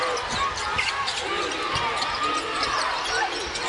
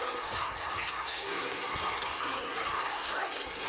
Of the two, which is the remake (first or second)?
second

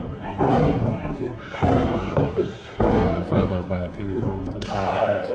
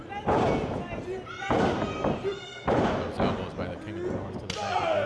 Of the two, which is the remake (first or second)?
first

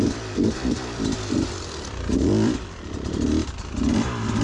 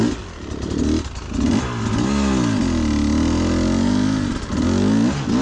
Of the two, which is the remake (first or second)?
first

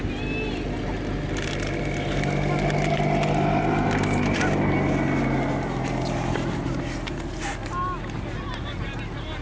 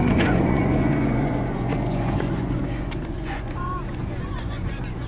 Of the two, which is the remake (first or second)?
second